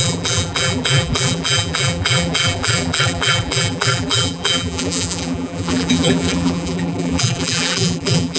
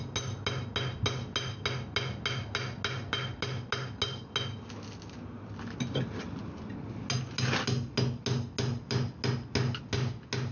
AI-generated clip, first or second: first